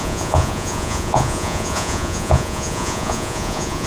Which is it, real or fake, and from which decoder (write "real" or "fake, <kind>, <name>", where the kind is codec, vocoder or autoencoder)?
fake, vocoder, Vocos